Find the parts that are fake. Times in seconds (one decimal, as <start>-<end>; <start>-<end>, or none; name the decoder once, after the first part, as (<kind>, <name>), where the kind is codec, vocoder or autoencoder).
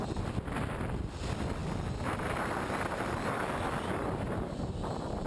none